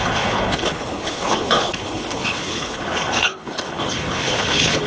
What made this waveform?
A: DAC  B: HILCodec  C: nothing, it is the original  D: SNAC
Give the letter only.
B